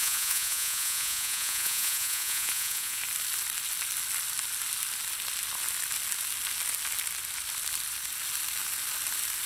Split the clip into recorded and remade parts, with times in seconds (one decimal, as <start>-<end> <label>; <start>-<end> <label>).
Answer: 0.0-3.0 remade; 3.0-9.5 recorded